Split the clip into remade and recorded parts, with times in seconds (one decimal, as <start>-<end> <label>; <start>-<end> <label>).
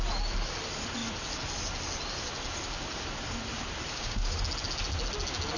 0.0-3.9 recorded; 3.9-4.4 remade; 4.4-5.6 recorded